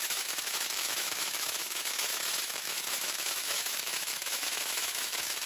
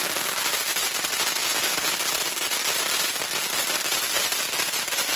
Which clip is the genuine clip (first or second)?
second